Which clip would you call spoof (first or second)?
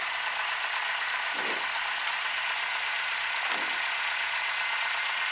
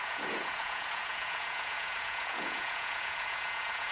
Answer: second